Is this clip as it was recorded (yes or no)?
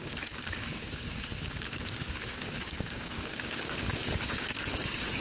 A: no